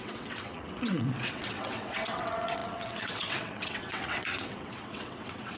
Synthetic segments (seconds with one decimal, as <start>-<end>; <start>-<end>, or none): 0.0-5.6